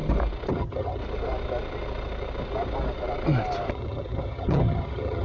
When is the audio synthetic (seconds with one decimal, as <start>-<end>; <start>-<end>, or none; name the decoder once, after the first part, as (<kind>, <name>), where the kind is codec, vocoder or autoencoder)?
0.5-1.0 (vocoder, HiFi-GAN); 3.7-5.2